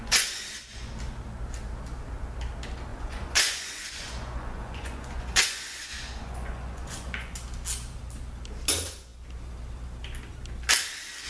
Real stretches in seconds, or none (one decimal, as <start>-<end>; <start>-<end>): 0.9-2.9; 7.3-11.3